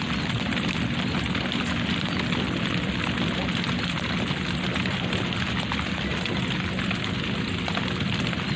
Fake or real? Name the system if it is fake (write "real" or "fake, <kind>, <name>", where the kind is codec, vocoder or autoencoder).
real